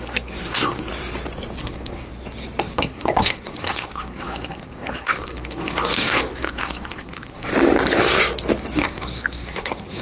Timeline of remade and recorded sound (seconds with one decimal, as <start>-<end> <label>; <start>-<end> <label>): 0.0-0.9 remade; 0.9-1.6 recorded; 1.6-2.1 remade; 2.1-2.6 recorded; 2.6-7.5 remade; 7.5-8.7 recorded; 8.7-10.0 remade